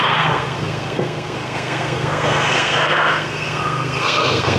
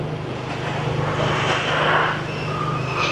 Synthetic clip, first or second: first